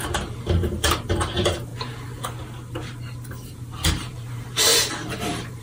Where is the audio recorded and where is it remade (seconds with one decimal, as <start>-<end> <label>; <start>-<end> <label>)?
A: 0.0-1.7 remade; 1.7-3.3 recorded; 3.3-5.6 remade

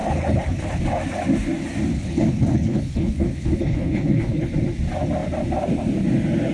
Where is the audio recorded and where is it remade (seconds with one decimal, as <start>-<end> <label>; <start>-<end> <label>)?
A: 0.0-0.8 remade; 0.8-1.9 recorded; 1.9-4.5 remade; 4.5-6.5 recorded

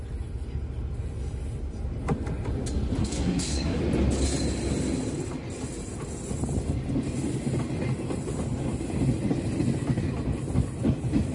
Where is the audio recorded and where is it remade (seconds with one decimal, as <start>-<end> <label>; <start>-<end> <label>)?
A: 0.0-3.0 recorded; 3.0-3.8 remade; 3.8-11.3 recorded

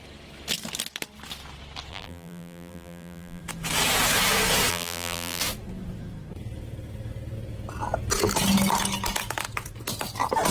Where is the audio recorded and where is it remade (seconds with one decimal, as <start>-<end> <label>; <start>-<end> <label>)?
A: 0.0-1.9 recorded; 1.9-3.4 remade; 3.4-4.7 recorded; 4.7-5.4 remade; 5.4-10.5 recorded

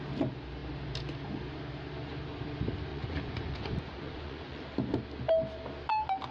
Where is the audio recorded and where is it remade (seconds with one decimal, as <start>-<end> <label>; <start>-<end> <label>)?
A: 0.0-2.9 recorded; 2.9-4.6 remade; 4.6-6.3 recorded

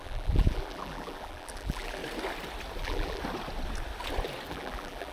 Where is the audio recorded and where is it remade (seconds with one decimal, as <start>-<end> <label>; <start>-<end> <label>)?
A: 0.0-2.0 remade; 2.0-2.8 recorded; 2.8-3.2 remade; 3.2-4.5 recorded; 4.5-5.1 remade